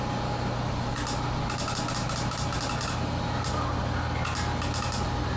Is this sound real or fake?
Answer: real